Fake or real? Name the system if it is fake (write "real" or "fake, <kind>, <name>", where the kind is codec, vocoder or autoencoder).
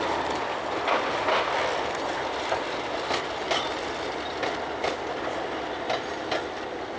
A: real